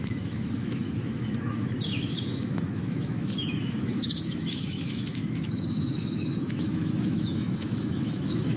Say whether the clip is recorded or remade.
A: remade